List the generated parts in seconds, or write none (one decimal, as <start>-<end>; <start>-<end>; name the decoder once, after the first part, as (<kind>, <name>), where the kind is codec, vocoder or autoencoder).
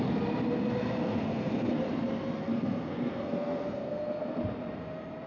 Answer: 1.0-1.8 (codec, SNAC); 2.4-4.4